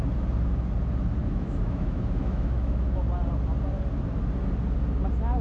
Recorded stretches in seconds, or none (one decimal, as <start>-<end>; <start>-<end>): 0.0-1.2; 3.0-5.4